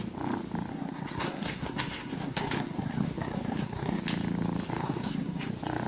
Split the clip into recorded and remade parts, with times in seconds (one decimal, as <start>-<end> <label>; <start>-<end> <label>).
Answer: 0.0-0.7 recorded; 0.7-4.0 remade; 4.0-4.8 recorded; 4.8-5.5 remade; 5.5-5.9 recorded